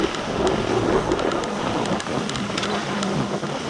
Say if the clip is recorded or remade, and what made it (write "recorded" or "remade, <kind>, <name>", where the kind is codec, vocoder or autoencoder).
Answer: recorded